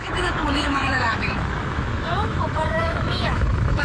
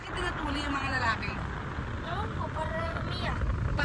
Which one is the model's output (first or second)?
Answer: first